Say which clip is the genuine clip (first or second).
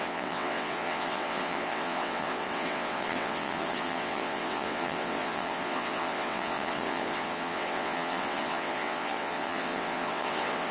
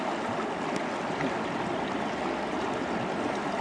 second